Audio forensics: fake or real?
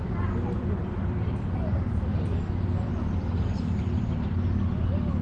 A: real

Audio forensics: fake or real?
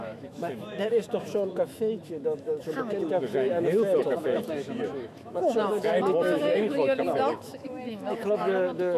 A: fake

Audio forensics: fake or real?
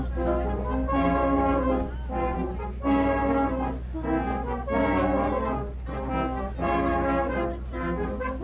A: real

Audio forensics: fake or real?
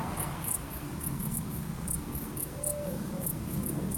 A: fake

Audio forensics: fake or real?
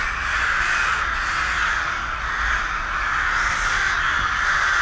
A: real